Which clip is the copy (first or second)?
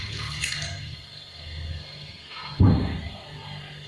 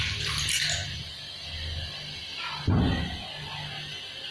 first